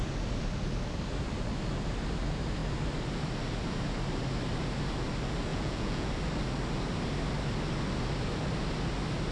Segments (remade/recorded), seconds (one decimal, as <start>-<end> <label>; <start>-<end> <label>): 0.0-5.5 recorded; 5.5-6.1 remade; 6.1-9.3 recorded